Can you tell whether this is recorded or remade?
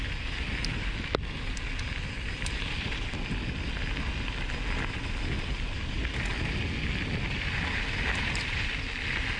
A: recorded